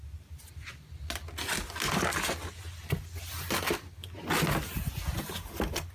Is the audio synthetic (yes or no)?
no